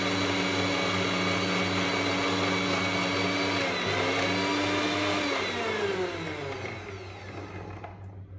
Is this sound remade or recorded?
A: recorded